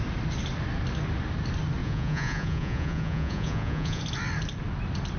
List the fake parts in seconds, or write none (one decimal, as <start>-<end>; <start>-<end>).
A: 1.8-4.0